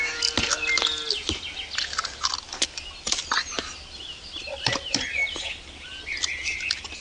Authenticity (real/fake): real